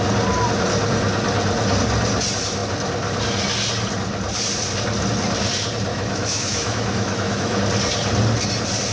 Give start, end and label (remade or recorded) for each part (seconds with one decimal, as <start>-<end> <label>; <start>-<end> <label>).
0.0-5.9 recorded; 5.9-7.6 remade; 7.6-8.9 recorded